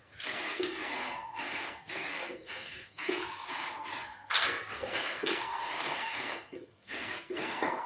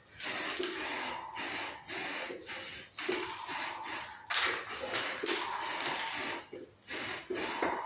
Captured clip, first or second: second